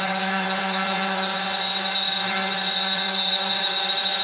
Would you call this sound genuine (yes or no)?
no